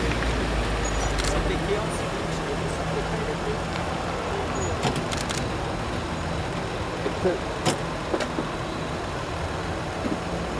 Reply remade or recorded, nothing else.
recorded